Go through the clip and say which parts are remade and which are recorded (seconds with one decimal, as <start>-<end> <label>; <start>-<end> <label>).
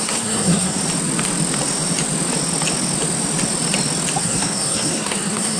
0.0-0.8 remade; 0.8-4.2 recorded; 4.2-5.6 remade